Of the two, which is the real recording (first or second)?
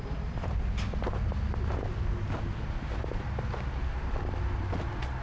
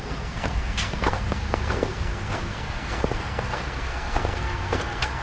first